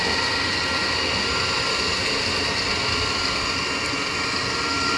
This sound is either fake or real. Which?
real